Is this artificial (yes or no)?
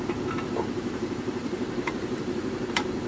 yes